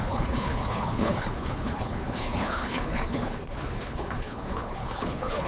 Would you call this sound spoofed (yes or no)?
yes